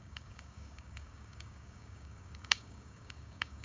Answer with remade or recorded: remade